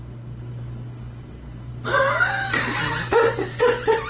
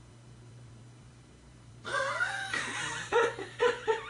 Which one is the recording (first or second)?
first